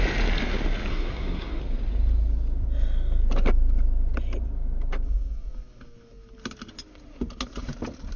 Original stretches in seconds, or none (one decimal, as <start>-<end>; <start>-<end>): 0.0-0.9; 1.6-8.2